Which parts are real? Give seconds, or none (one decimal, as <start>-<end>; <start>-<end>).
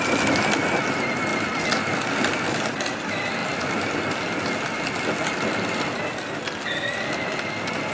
0.0-7.9